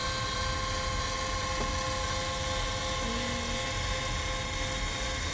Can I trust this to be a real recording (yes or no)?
yes